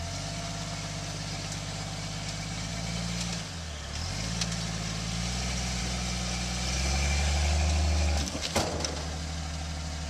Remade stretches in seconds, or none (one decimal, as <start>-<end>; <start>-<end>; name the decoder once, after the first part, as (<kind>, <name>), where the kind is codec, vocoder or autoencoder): none